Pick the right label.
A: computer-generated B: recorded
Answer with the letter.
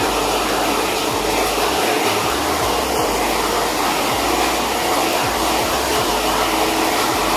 B